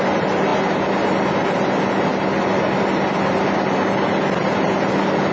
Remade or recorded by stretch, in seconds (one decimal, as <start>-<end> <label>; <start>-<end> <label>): 0.0-5.3 recorded